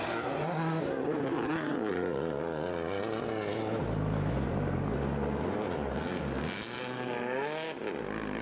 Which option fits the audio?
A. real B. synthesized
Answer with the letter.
A